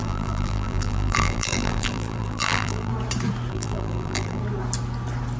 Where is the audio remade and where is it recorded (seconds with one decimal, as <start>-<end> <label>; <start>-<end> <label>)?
0.0-2.9 remade; 2.9-3.5 recorded; 3.5-4.4 remade; 4.4-5.4 recorded